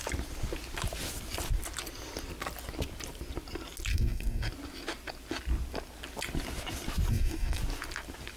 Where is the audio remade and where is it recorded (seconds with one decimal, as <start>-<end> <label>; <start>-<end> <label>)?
0.0-3.9 recorded; 3.9-4.5 remade; 4.5-7.1 recorded; 7.1-7.6 remade; 7.6-8.4 recorded